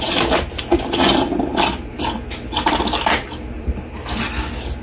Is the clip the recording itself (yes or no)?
yes